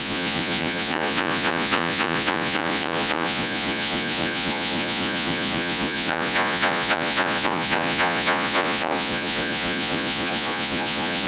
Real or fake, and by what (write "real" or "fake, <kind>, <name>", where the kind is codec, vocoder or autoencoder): fake, vocoder, Vocos